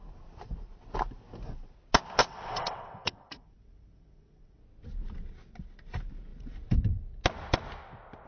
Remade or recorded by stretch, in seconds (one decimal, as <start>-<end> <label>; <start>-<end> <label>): 0.0-2.2 recorded; 2.2-4.6 remade; 4.6-8.3 recorded